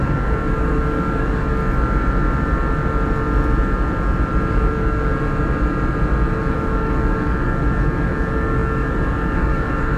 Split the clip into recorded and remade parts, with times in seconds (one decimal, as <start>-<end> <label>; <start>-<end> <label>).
0.0-1.6 remade; 1.6-4.5 recorded; 4.5-5.1 remade; 5.1-6.4 recorded; 6.4-10.0 remade